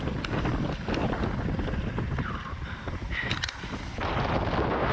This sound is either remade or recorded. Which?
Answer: recorded